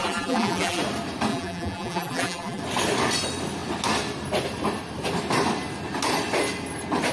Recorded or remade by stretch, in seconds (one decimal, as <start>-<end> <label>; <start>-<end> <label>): 0.0-0.8 remade; 0.8-1.3 recorded; 1.3-2.6 remade; 2.6-7.1 recorded